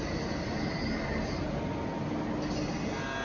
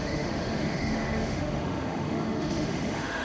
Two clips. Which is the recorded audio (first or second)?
first